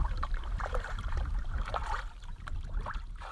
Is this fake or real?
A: fake